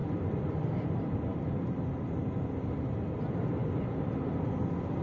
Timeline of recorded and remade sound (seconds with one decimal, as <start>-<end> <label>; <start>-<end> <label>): 0.0-5.0 recorded